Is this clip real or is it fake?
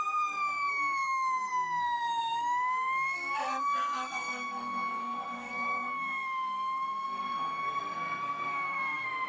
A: fake